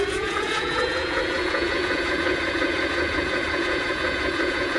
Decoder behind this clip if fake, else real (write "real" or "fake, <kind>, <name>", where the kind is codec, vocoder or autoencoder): fake, vocoder, Vocos